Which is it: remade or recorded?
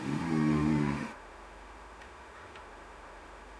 remade